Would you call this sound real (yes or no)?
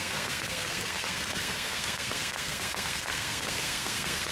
no